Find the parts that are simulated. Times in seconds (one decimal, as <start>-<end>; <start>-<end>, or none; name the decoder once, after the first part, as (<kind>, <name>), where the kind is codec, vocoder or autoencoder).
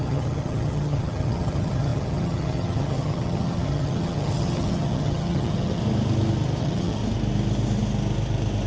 0.0-5.8 (vocoder, HiFi-GAN); 6.6-7.0